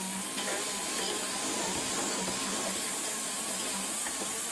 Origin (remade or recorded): recorded